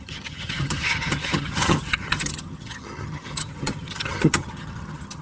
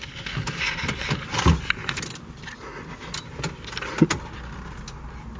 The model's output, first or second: first